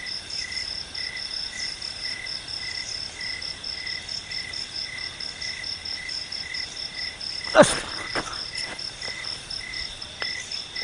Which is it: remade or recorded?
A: recorded